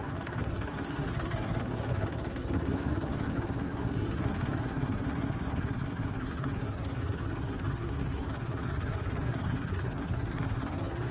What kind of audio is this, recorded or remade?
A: remade